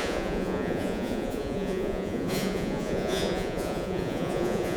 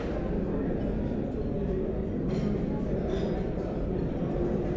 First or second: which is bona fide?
second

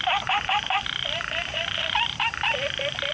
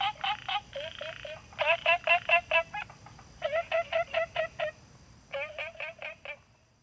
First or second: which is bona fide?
second